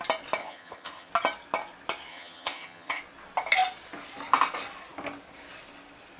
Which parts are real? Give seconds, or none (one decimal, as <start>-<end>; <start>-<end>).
0.0-0.4; 1.1-2.1; 3.0-6.2